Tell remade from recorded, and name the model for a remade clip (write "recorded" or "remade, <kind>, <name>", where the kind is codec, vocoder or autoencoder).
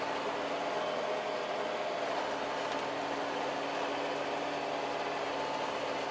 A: recorded